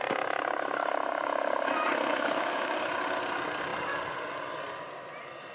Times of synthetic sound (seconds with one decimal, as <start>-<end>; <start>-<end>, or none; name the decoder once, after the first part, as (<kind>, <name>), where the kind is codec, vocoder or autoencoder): 2.1-2.8 (codec, DAC)